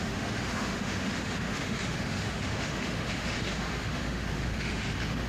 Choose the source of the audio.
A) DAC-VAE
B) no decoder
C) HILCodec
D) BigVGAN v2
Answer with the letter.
A